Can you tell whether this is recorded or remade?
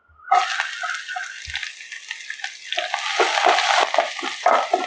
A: recorded